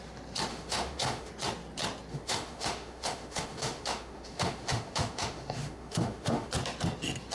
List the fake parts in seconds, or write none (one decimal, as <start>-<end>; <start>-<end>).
0.5-1.3; 2.1-6.5